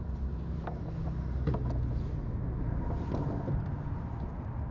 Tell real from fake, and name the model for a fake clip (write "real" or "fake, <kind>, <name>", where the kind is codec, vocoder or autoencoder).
real